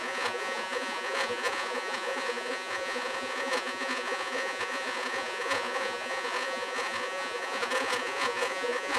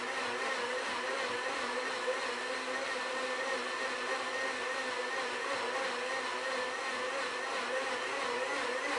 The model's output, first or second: first